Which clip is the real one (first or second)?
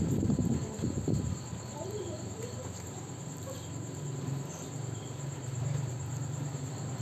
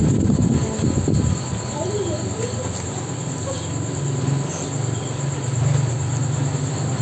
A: second